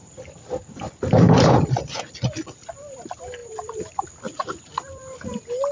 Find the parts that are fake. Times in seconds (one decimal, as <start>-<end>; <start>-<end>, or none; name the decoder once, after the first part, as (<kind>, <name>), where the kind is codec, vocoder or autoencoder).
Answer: none